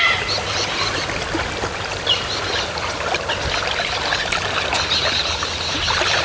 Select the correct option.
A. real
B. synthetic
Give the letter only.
A